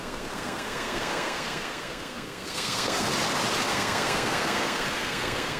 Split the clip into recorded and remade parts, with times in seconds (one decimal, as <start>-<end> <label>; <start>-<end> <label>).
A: 0.0-3.1 remade; 3.1-3.7 recorded; 3.7-5.6 remade

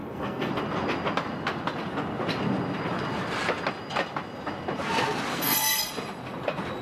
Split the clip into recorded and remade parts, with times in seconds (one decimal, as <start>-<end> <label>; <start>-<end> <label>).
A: 0.0-0.5 remade; 0.5-5.3 recorded; 5.3-5.9 remade; 5.9-6.8 recorded

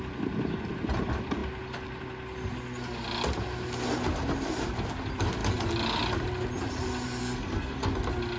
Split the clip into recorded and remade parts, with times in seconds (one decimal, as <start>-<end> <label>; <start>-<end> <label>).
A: 0.0-7.2 recorded; 7.2-7.9 remade; 7.9-8.4 recorded

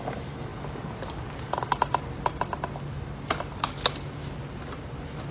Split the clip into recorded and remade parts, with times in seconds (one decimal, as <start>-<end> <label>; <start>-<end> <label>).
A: 0.0-5.3 recorded